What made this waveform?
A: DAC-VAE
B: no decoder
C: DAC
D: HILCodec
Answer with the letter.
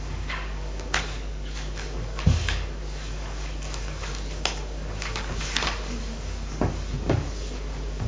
C